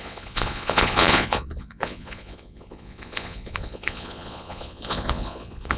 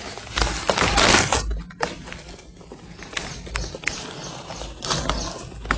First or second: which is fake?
first